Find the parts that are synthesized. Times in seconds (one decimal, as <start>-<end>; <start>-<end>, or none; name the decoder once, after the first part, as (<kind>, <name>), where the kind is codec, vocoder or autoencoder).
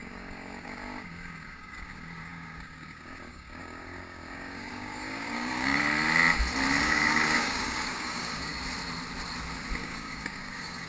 0.0-5.8 (codec, DAC); 6.8-8.5; 9.8-10.9